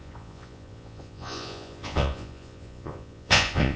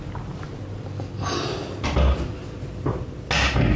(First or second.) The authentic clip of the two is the second